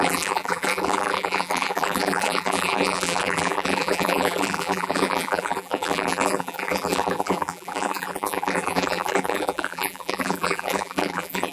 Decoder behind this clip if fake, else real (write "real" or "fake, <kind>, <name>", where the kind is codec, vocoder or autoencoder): fake, vocoder, BigVGAN v2